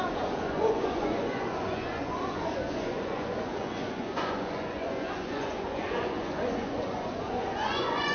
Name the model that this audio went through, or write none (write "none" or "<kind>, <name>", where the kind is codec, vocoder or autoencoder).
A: vocoder, Vocos